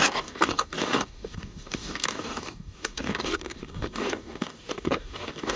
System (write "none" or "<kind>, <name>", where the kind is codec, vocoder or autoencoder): codec, DAC